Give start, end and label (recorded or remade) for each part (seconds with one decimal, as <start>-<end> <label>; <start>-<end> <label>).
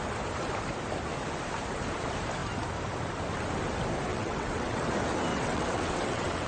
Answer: 0.0-4.1 recorded; 4.1-4.8 remade; 4.8-5.3 recorded; 5.3-6.5 remade